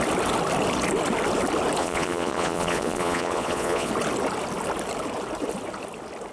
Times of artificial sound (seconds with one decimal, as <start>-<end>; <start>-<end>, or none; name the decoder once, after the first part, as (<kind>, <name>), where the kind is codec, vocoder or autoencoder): 1.8-3.9 (vocoder, Vocos)